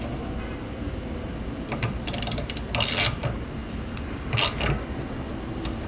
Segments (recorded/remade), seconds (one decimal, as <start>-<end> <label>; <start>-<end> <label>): 0.0-5.9 recorded